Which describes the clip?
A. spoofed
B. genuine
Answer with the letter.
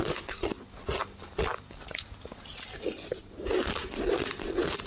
B